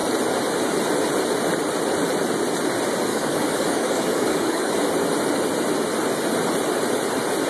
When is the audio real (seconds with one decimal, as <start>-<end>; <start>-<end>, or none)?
0.0-3.1; 4.7-7.5

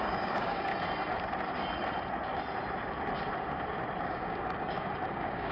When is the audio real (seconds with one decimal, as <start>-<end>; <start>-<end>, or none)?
0.7-4.0